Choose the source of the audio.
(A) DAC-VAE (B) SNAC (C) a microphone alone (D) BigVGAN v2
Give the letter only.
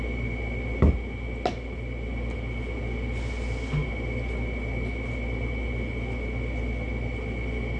C